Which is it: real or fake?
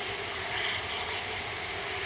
real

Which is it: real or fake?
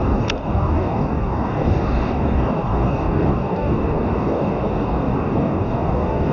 fake